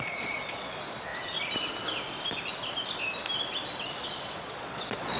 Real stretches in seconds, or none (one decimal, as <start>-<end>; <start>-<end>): 1.1-3.9